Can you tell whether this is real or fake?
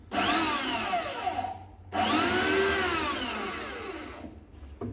real